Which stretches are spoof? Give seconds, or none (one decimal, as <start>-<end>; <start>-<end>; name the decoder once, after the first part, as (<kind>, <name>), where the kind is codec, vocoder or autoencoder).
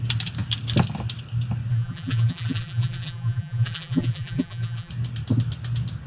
1.7-4.9 (vocoder, BigVGAN v2)